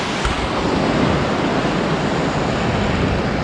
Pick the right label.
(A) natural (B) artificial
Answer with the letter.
A